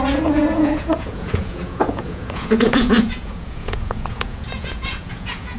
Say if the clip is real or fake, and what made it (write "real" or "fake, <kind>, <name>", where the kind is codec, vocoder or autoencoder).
fake, vocoder, Vocos